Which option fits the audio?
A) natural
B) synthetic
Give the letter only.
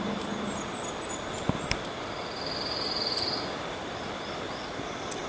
A